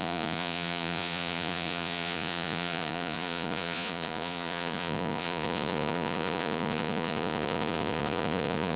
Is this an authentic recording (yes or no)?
no